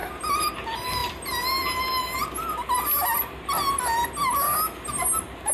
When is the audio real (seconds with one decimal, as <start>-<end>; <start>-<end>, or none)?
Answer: 0.5-5.5

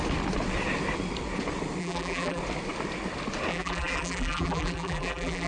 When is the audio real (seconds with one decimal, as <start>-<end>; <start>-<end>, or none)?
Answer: 0.0-1.8; 2.4-3.5

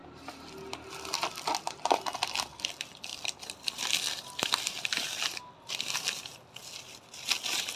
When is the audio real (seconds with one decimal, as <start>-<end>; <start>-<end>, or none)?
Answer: 0.0-3.1; 3.9-7.8

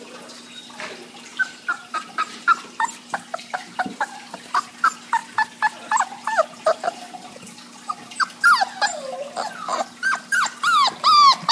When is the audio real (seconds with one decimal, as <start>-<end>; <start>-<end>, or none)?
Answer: 0.0-1.3; 4.7-11.5

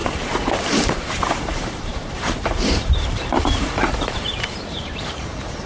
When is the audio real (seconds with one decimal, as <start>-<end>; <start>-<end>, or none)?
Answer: none

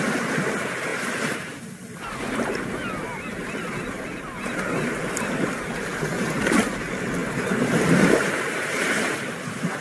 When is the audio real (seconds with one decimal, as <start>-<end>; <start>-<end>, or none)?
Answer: 0.0-0.9; 1.6-7.2; 9.3-9.8